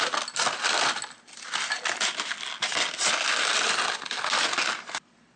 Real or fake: real